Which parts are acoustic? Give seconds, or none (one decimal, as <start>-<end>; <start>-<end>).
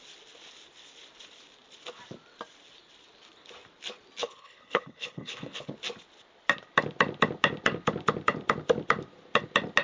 0.0-4.2; 5.7-9.8